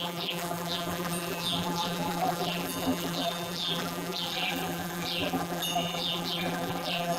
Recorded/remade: remade